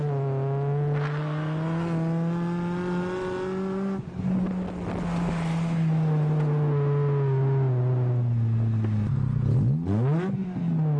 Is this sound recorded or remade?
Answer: recorded